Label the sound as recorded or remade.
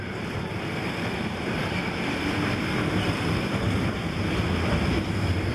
remade